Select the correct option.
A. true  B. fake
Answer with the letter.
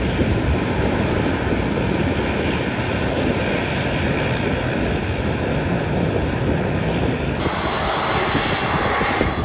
A